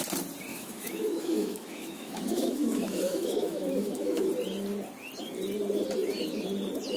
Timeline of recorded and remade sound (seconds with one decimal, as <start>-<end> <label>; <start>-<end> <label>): 0.0-0.5 recorded; 0.5-4.3 remade; 4.3-7.0 recorded